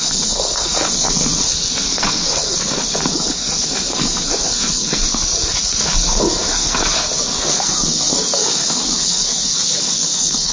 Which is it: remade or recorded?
remade